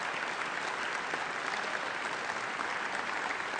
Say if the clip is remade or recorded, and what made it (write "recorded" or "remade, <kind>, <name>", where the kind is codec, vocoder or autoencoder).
recorded